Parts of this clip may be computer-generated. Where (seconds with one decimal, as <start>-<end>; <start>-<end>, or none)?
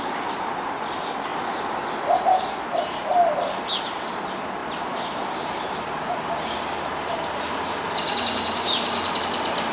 4.6-9.2